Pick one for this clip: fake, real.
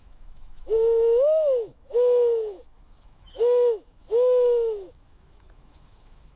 fake